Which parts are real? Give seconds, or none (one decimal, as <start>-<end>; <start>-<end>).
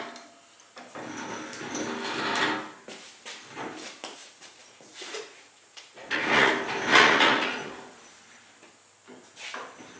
0.0-4.2; 6.5-6.9; 7.7-10.0